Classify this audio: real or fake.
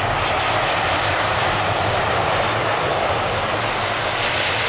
real